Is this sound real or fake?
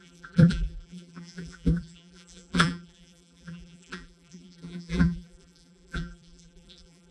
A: fake